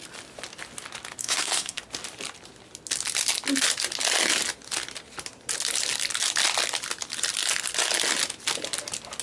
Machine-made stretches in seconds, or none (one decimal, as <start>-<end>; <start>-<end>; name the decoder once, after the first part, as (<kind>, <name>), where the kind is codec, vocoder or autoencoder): 1.2-1.8 (codec, SNAC)